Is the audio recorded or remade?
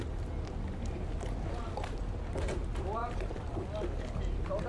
recorded